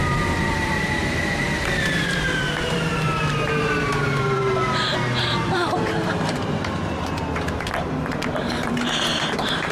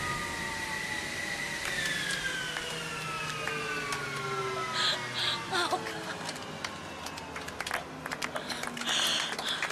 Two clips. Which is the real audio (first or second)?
second